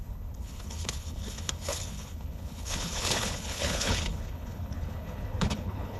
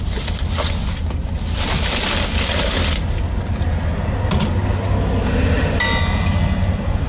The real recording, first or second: second